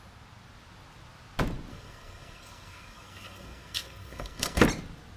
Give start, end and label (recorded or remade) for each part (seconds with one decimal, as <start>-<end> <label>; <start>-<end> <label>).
0.0-1.7 recorded; 1.7-4.6 remade; 4.6-5.2 recorded